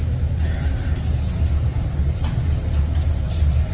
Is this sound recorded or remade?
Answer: recorded